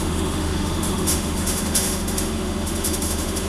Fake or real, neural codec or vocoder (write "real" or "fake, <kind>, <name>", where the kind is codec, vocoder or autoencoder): fake, autoencoder, DAC-VAE